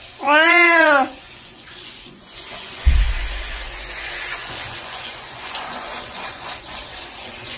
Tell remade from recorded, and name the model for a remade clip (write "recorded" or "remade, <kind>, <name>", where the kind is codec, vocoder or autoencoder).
remade, vocoder, Vocos